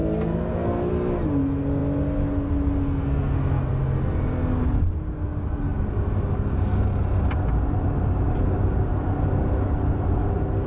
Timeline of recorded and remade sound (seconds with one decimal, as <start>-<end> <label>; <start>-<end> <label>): 0.0-0.9 remade; 0.9-3.0 recorded; 3.0-3.7 remade; 3.7-10.7 recorded